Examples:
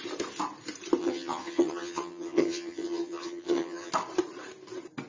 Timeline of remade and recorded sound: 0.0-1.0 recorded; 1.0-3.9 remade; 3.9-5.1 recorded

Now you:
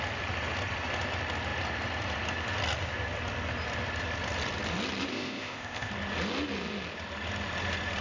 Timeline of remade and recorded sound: 0.0-5.1 recorded; 5.1-5.9 remade; 5.9-8.0 recorded

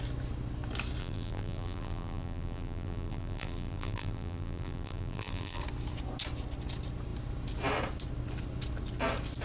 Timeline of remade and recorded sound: 0.0-1.0 recorded; 1.0-5.6 remade; 5.6-9.4 recorded

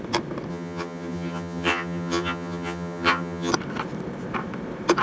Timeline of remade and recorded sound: 0.0-0.5 recorded; 0.5-3.5 remade; 3.5-5.0 recorded